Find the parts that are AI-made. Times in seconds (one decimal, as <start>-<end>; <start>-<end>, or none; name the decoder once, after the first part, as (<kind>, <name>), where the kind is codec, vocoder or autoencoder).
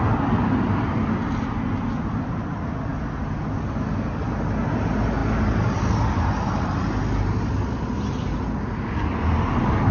none